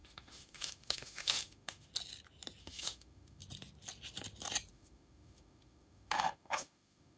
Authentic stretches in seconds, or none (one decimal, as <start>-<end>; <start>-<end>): 1.9-2.6; 3.4-4.7